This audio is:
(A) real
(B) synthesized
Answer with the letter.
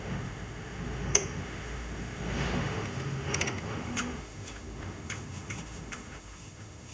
B